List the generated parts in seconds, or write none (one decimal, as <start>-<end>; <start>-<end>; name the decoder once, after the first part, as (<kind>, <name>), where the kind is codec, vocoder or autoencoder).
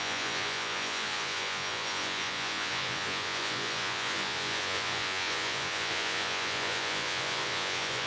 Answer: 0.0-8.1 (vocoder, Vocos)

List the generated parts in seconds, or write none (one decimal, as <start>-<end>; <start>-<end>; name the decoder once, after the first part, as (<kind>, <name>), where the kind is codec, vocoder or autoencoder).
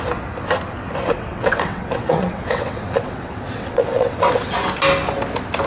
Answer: 1.1-4.5 (vocoder, WaveNeXt)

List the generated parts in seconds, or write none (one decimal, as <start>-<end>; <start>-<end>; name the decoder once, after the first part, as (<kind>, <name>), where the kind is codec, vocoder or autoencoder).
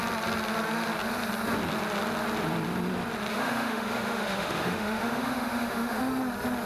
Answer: 3.3-6.0 (autoencoder, DAC-VAE)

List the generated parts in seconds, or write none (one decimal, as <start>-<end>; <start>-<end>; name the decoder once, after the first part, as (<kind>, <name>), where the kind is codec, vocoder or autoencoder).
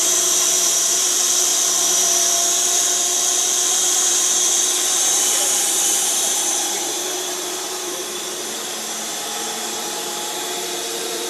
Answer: 0.0-1.5 (vocoder, BigVGAN v2); 3.7-11.3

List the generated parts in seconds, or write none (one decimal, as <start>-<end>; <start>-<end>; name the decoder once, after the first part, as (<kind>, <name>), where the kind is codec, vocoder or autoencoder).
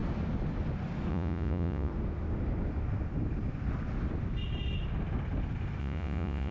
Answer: 1.1-1.9 (vocoder, Vocos); 5.8-6.5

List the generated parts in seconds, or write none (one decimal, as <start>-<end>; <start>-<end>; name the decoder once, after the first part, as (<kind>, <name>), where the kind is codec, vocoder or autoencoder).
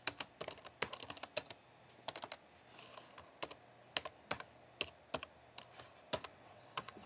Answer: 6.3-7.1 (vocoder, WaveNeXt)